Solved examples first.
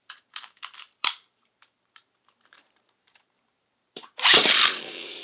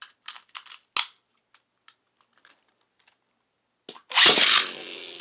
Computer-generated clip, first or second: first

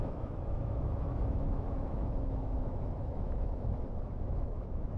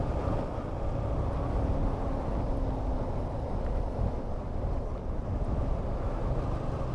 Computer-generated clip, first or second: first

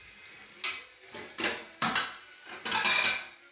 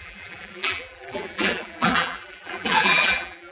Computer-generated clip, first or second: second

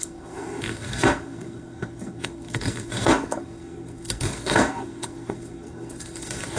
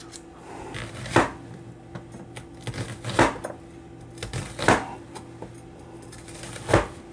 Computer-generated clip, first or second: first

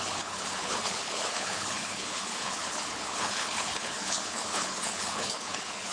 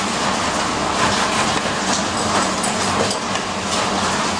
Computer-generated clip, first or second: first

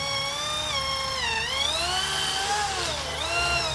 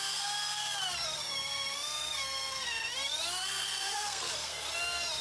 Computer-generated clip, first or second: second